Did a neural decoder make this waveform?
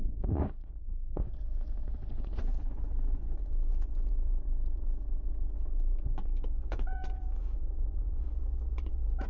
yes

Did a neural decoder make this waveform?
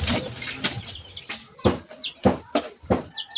no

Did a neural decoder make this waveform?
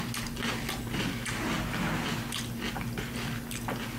no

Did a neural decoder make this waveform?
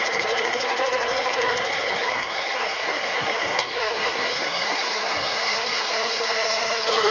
yes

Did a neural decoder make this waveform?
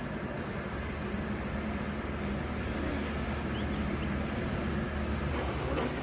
no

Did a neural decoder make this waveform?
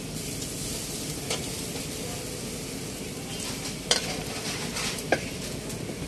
no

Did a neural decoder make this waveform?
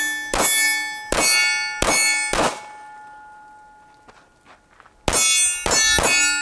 no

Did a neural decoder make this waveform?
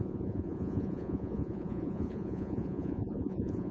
yes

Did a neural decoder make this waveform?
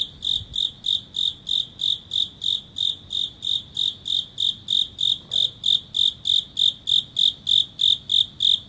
no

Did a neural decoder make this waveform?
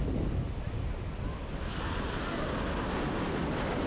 no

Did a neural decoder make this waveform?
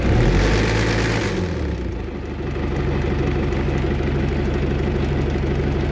no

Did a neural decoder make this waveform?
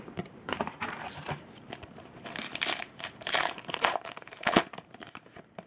yes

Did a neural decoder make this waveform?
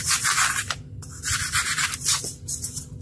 no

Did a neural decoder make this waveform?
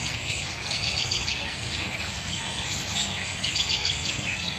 yes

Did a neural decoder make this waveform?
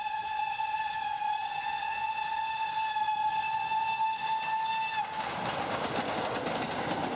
no